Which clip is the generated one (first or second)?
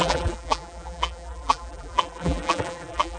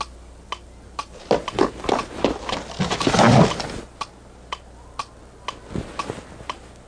first